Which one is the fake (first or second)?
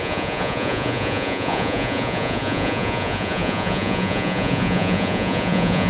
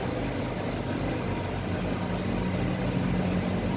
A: first